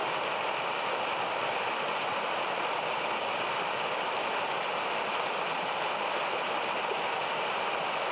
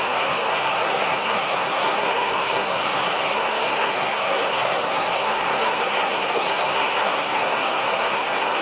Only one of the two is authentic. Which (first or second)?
first